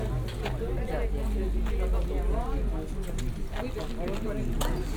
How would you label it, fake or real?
real